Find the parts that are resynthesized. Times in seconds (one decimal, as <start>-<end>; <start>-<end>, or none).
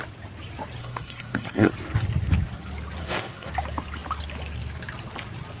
0.8-1.7; 3.0-3.5